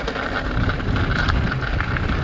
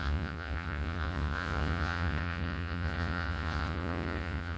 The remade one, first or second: second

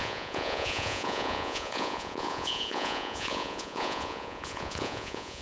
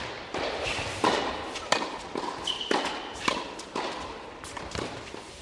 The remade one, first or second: first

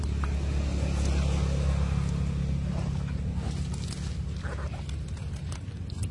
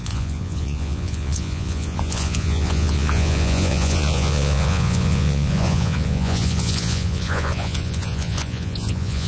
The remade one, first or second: second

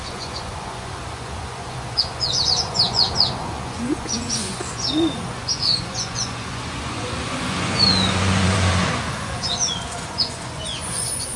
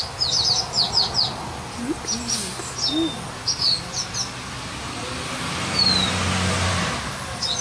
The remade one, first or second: first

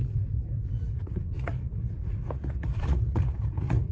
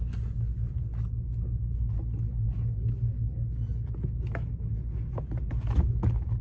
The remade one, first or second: first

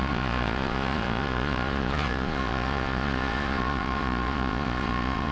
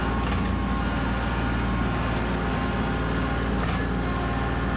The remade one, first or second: first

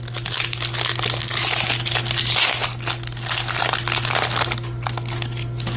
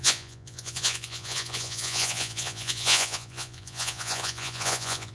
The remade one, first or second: second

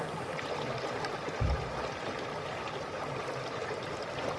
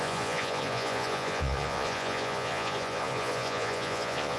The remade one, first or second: second